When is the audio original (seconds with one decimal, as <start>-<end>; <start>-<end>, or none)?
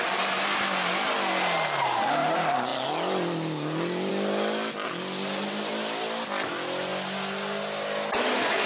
0.0-8.7